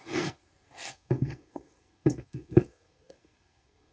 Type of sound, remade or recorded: remade